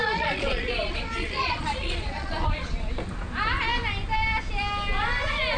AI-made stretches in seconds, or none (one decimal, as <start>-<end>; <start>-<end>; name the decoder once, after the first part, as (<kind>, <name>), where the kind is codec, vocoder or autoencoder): 0.0-2.9 (vocoder, Vocos)